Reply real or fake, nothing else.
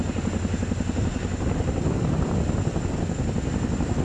real